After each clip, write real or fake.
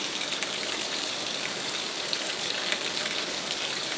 fake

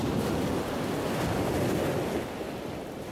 real